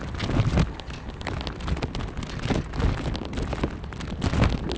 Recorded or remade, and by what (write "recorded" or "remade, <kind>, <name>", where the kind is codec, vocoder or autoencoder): recorded